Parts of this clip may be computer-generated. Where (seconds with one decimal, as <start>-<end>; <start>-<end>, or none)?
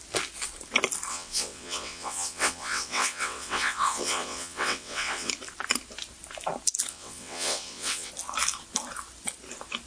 1.1-5.3; 6.9-8.1